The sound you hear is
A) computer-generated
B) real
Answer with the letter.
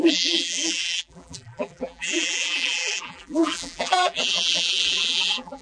A